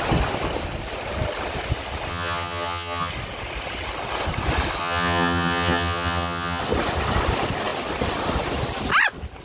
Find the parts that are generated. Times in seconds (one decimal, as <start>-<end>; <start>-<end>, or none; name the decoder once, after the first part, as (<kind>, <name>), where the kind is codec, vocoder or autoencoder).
2.1-3.1 (vocoder, HiFi-GAN); 4.8-6.6